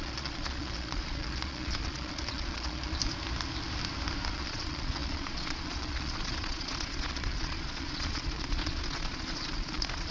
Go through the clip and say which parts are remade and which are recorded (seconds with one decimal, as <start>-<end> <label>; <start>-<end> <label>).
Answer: 0.0-3.0 remade; 3.0-4.3 recorded; 4.3-10.1 remade